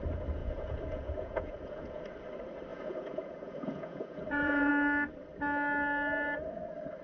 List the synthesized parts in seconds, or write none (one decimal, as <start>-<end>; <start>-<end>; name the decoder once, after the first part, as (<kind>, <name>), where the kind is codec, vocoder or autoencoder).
0.4-2.0 (vocoder, Vocos); 2.7-4.7